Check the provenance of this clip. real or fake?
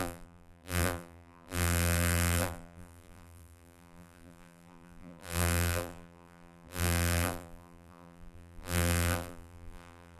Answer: fake